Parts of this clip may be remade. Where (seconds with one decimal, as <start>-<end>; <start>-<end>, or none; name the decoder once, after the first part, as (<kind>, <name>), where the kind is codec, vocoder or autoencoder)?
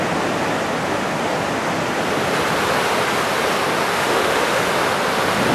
3.9-4.6 (autoencoder, DAC-VAE)